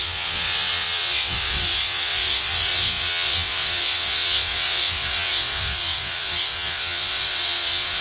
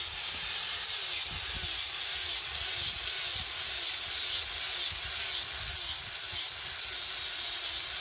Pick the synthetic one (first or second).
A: first